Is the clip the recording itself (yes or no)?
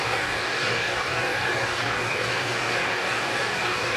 no